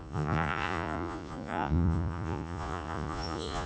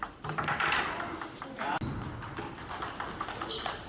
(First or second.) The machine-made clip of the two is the first